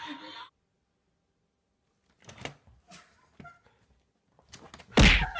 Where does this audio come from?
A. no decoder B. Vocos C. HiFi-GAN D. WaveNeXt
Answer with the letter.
A